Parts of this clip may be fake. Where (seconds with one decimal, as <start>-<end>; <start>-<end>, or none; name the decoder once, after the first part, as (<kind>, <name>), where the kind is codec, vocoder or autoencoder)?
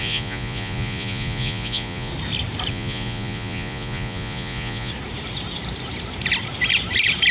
0.0-2.1 (vocoder, Vocos); 2.7-4.9